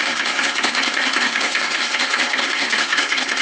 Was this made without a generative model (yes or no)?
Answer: no